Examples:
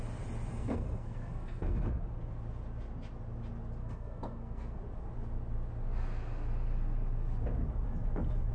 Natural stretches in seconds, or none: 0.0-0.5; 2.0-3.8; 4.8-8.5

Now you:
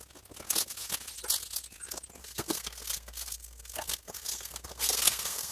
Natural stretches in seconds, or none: 0.0-2.2